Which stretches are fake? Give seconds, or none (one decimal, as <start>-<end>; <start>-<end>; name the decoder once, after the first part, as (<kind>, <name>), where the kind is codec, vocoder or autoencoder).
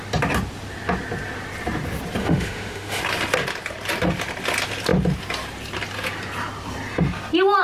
2.2-3.0 (autoencoder, DAC-VAE)